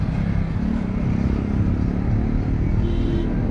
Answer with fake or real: real